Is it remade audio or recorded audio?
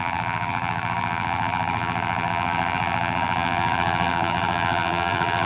remade